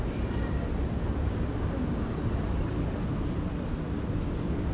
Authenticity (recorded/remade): recorded